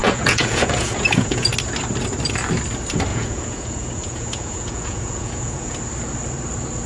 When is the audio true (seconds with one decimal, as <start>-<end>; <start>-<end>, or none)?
1.5-3.1; 5.8-6.9